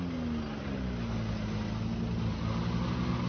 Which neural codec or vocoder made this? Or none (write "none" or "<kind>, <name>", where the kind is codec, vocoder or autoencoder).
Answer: none